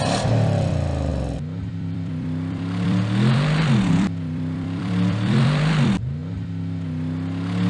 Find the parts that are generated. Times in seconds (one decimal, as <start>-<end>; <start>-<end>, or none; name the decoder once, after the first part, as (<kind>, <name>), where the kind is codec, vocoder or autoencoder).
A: 0.0-1.1 (vocoder, BigVGAN v2); 1.7-6.2